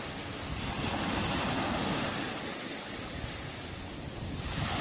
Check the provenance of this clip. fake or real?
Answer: real